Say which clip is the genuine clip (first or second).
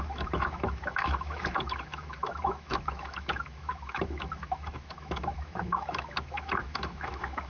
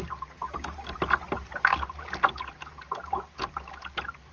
second